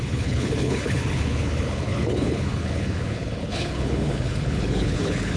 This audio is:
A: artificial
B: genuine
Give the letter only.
A